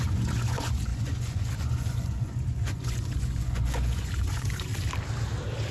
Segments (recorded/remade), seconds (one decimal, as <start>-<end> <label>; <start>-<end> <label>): 0.0-4.7 remade; 4.7-5.7 recorded